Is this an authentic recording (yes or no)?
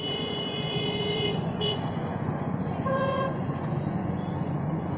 no